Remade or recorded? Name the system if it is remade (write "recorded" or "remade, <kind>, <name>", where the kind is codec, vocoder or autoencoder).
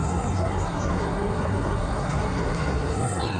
remade, codec, SNAC